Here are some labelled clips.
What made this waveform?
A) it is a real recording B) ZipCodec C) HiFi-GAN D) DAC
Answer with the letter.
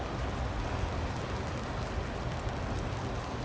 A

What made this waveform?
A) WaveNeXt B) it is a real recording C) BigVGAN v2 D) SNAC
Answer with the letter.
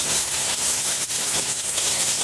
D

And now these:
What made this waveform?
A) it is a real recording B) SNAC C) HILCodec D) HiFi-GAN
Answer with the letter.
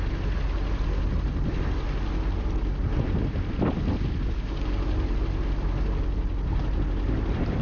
A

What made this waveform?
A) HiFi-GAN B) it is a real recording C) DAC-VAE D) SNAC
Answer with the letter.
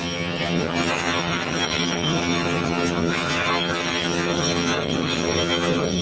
A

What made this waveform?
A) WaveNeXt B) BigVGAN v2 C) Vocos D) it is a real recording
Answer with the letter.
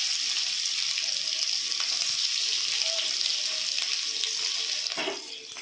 D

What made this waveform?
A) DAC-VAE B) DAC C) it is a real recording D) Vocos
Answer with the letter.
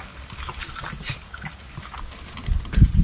C